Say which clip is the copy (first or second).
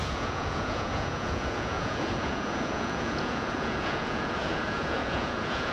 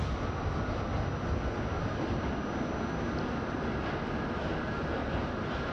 first